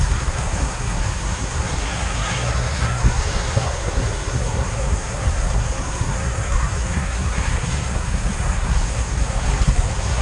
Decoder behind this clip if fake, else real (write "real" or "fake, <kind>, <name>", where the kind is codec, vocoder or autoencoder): fake, codec, SNAC